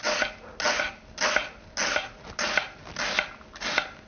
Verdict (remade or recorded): recorded